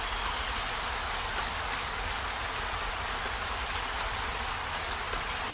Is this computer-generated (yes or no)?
no